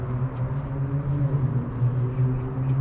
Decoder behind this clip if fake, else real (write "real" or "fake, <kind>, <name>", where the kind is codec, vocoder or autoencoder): real